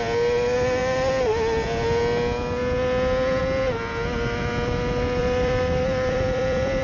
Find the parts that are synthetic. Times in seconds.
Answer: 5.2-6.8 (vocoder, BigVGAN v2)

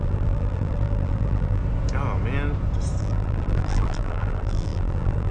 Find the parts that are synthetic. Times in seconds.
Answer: 0.0-1.6 (vocoder, BigVGAN v2); 3.0-5.3

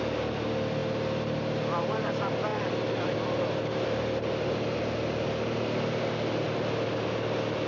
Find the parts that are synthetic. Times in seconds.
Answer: none

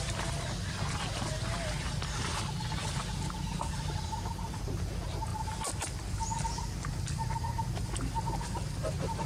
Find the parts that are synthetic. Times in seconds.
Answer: 2.8-4.6 (vocoder, BigVGAN v2); 5.3-8.9

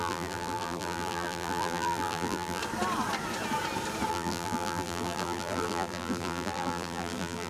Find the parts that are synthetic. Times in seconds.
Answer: 0.0-2.6 (vocoder, BigVGAN v2); 4.1-7.5

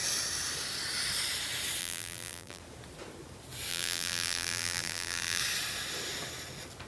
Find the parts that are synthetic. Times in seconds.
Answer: 1.8-2.6 (vocoder, BigVGAN v2); 3.7-5.4

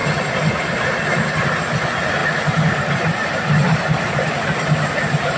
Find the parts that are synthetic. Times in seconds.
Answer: 2.2-5.4 (vocoder, BigVGAN v2)